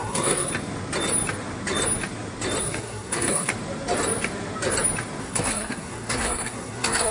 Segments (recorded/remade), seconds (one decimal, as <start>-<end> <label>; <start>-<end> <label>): 0.0-0.5 remade; 0.5-2.6 recorded; 2.6-3.5 remade; 3.5-5.2 recorded; 5.2-7.1 remade